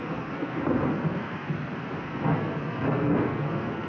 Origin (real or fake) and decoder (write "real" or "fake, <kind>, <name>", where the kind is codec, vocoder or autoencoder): fake, codec, SNAC